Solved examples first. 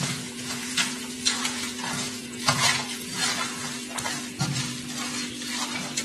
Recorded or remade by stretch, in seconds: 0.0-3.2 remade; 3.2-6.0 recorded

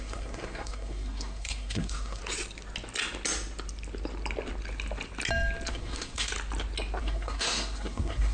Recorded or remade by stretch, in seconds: 0.0-2.2 remade; 2.2-5.7 recorded; 5.7-6.3 remade; 6.3-7.0 recorded; 7.0-8.3 remade

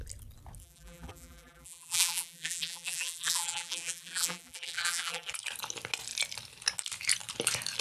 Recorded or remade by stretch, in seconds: 0.0-0.6 recorded; 0.6-5.3 remade; 5.3-7.8 recorded

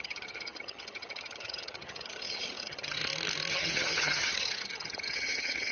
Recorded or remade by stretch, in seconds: 0.0-3.0 remade; 3.0-3.5 recorded; 3.5-5.7 remade